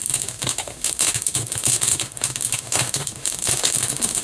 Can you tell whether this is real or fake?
fake